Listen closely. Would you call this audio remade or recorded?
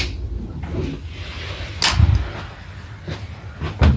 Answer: recorded